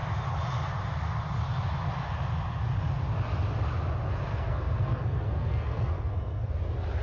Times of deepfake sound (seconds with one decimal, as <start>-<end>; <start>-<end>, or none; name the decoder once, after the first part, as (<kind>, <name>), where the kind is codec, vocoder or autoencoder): 4.3-6.5 (codec, SNAC)